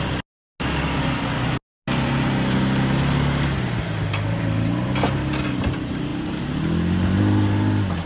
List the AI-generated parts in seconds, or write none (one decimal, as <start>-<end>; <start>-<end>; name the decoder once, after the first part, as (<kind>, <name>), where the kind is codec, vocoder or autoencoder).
none